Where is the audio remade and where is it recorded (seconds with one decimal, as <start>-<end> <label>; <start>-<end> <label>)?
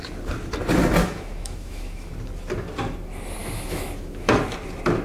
0.0-1.0 recorded; 1.0-2.1 remade; 2.1-3.4 recorded; 3.4-4.3 remade; 4.3-5.0 recorded